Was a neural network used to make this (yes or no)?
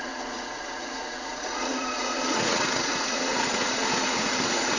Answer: yes